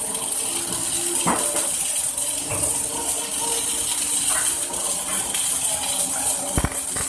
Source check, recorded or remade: recorded